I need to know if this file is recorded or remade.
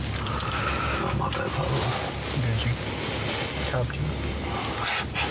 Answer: recorded